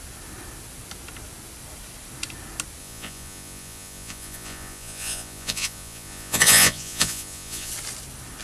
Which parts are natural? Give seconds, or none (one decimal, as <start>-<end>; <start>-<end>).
0.0-2.8; 7.7-8.4